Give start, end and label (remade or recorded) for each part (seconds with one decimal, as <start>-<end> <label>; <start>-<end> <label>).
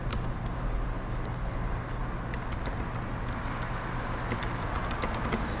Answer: 0.0-1.1 recorded; 1.1-2.0 remade; 2.0-5.6 recorded